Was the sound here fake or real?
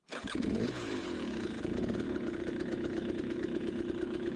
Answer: fake